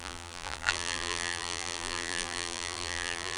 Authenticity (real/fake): fake